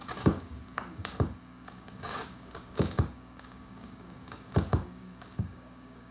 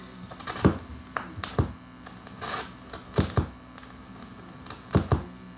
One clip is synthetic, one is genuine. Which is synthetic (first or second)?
first